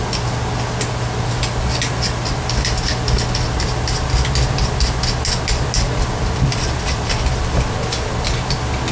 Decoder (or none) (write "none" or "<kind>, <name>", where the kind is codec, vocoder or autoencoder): none